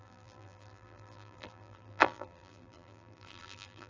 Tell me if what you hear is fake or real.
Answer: fake